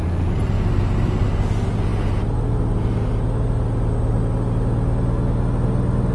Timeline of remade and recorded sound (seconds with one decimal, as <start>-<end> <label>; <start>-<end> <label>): 0.0-6.1 recorded